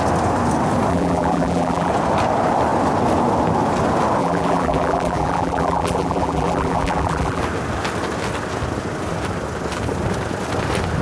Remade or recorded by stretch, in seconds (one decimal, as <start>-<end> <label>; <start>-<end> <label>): 0.0-0.9 recorded; 0.9-1.9 remade; 1.9-4.2 recorded; 4.2-7.4 remade; 7.4-11.0 recorded